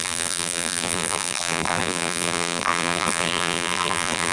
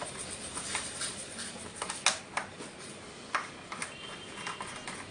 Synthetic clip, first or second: first